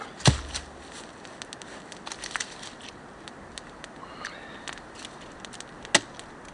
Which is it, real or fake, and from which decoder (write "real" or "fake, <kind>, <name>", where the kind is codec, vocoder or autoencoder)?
real